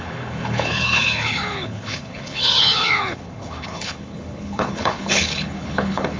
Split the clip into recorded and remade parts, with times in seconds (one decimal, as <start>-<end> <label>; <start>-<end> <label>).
0.0-6.2 remade